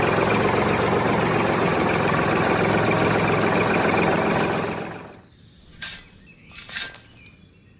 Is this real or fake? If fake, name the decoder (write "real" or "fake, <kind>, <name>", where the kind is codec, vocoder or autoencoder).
real